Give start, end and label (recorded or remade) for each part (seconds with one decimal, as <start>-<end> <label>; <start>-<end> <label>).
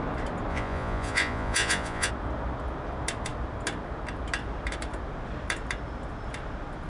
0.0-0.5 recorded; 0.5-2.1 remade; 2.1-6.9 recorded